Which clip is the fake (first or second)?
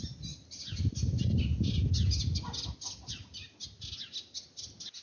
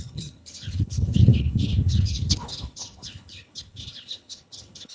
second